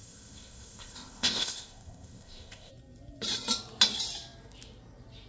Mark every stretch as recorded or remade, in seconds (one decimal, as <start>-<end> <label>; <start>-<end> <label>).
0.0-2.7 remade; 2.7-5.3 recorded